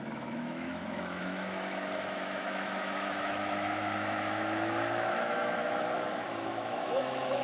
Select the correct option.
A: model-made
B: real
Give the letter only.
A